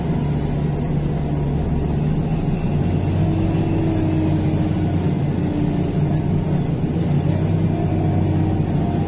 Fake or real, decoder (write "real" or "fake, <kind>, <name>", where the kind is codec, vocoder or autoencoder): real